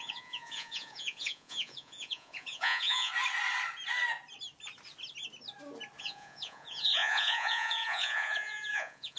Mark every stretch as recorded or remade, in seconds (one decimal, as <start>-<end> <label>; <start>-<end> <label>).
0.0-3.1 remade; 3.1-6.0 recorded; 6.0-9.2 remade